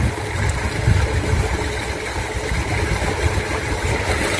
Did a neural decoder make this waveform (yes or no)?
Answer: no